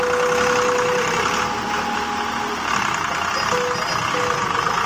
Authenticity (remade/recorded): recorded